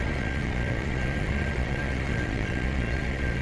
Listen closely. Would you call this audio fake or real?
fake